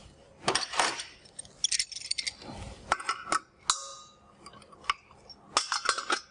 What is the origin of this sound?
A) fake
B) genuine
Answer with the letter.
B